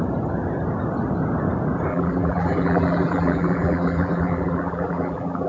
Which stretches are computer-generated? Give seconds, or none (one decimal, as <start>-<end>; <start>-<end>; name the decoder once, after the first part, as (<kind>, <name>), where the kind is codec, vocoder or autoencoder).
1.9-5.5 (vocoder, BigVGAN v2)